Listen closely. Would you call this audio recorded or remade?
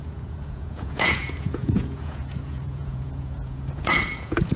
remade